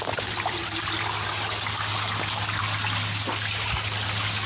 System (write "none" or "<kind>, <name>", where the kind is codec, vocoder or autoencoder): none